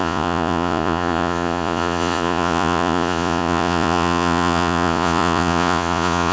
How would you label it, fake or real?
fake